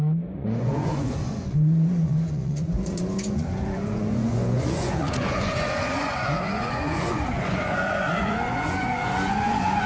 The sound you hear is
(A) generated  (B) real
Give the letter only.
A